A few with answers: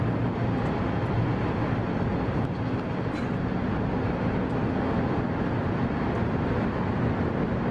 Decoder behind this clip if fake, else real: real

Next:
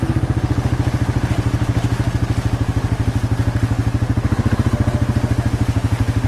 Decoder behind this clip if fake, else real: real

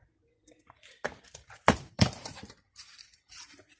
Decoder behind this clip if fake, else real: fake, vocoder, BigVGAN v2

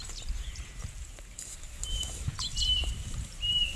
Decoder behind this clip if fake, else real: fake, vocoder, BigVGAN v2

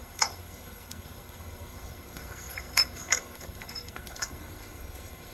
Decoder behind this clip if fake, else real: fake, codec, SNAC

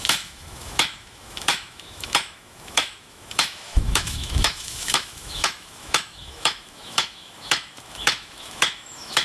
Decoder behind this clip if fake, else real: fake, autoencoder, DAC-VAE